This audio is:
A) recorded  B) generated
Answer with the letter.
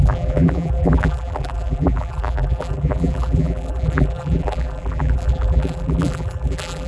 B